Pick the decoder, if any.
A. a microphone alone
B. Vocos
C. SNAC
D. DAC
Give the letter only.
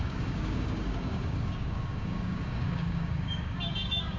D